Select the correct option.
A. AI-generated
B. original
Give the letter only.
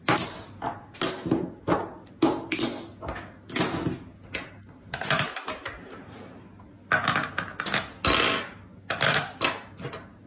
B